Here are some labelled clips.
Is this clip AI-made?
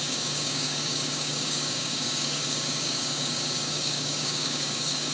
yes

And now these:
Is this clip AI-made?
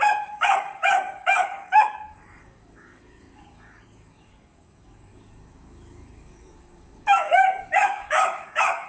yes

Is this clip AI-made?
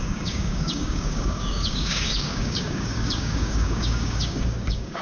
yes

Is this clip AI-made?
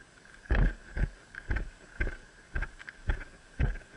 yes